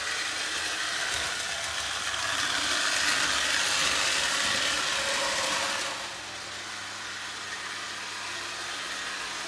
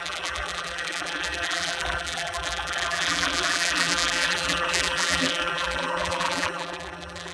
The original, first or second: first